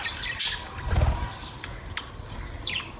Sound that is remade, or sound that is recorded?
remade